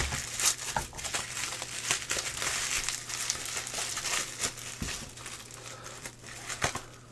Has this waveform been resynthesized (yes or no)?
no